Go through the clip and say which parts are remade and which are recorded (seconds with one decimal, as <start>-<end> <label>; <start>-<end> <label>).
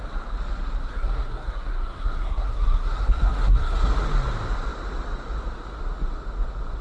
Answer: 0.0-0.9 recorded; 0.9-3.9 remade; 3.9-6.8 recorded